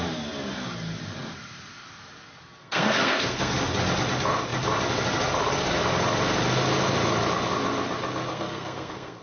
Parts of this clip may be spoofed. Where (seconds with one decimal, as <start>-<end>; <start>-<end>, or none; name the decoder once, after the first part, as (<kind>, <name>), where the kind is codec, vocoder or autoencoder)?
2.6-3.5 (codec, SNAC); 8.3-9.2